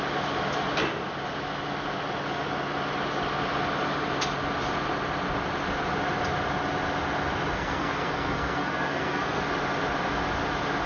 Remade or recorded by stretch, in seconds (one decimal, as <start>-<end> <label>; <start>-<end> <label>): 0.0-7.5 recorded; 7.5-9.4 remade; 9.4-10.9 recorded

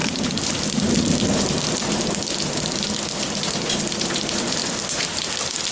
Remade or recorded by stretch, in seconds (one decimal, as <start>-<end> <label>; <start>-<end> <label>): 0.0-5.7 recorded

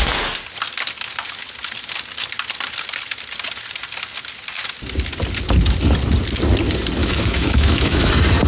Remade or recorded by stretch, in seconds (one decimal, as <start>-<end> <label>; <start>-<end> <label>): 0.0-7.0 recorded; 7.0-8.1 remade; 8.1-8.5 recorded

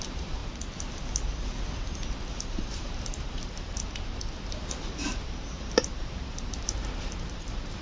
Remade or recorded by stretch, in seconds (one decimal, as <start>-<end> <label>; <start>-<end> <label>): 0.0-0.4 remade; 0.4-2.4 recorded; 2.4-7.8 remade

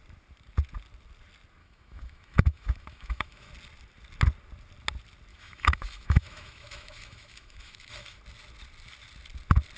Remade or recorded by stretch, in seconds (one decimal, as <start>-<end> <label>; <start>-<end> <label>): 0.0-1.6 recorded; 1.6-3.5 remade; 3.5-5.3 recorded; 5.3-8.2 remade; 8.2-9.8 recorded

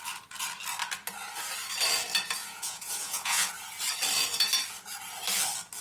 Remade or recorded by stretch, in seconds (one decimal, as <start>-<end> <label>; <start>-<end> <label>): 0.0-2.4 recorded; 2.4-3.5 remade; 3.5-5.8 recorded

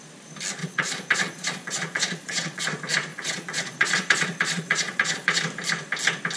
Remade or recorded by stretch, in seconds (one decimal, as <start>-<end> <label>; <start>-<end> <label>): 0.0-0.6 recorded; 0.6-2.6 remade; 2.6-3.1 recorded; 3.1-5.4 remade; 5.4-6.4 recorded